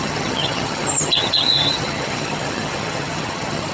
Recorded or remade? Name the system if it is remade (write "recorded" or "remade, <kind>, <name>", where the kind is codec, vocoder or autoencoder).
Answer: remade, vocoder, HiFi-GAN